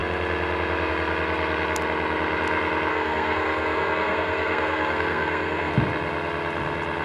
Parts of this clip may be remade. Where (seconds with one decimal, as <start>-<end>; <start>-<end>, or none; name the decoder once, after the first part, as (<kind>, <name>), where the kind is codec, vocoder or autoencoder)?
2.9-5.7 (codec, SNAC)